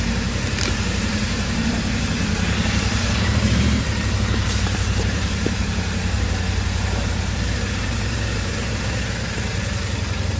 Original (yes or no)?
no